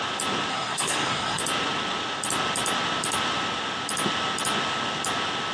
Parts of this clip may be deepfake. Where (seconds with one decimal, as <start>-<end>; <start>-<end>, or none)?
0.5-1.4